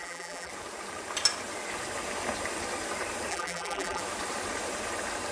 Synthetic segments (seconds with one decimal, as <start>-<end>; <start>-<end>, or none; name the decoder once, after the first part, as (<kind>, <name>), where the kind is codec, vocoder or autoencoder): 0.0-0.5 (vocoder, BigVGAN v2); 3.3-4.0